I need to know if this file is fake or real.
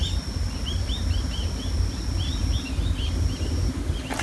real